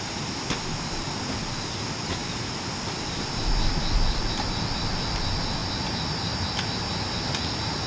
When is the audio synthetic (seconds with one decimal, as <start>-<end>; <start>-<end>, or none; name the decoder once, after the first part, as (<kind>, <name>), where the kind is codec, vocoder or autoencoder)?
none